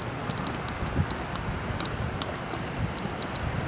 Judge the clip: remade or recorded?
recorded